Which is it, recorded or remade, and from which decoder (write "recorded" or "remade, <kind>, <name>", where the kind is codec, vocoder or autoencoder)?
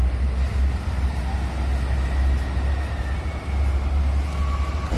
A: recorded